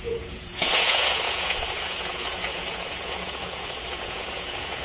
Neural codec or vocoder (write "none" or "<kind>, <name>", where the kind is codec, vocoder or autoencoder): vocoder, Vocos